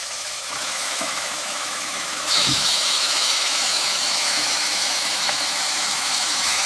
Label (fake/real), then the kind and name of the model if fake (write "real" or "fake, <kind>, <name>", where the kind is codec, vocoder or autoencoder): fake, autoencoder, DAC-VAE